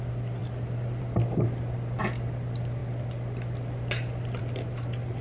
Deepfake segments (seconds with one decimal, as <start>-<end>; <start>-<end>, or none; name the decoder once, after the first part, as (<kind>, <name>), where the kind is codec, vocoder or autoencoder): none